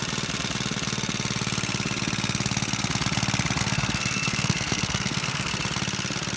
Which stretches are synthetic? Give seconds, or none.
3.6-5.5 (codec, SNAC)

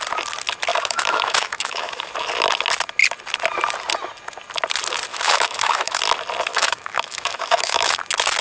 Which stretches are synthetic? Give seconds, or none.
0.7-2.1 (autoencoder, DAC-VAE); 5.1-6.0; 6.5-8.0

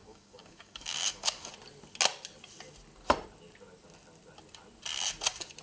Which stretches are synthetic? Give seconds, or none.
0.0-1.5 (codec, DAC)